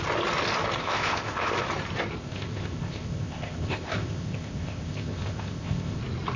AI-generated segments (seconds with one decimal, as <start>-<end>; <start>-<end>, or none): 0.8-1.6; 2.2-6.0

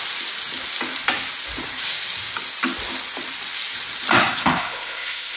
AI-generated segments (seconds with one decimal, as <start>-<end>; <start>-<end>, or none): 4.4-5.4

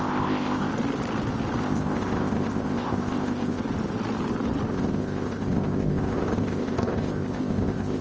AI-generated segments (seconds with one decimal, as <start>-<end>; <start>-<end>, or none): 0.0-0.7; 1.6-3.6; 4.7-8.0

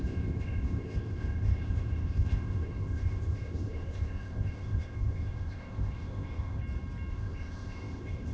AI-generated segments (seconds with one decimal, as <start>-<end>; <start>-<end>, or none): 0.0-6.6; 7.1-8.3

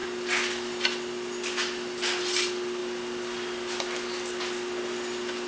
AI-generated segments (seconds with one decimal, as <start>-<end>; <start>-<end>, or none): none

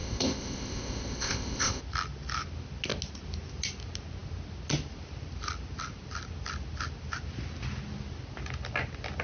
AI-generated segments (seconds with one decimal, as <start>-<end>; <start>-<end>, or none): 0.0-1.8

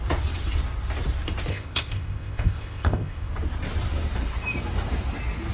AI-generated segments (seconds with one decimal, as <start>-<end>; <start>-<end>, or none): 1.5-3.3